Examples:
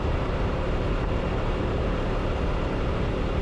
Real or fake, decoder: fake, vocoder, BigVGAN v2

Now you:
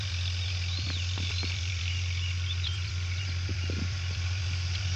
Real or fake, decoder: fake, vocoder, BigVGAN v2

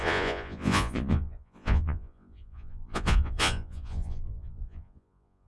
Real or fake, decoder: fake, vocoder, Vocos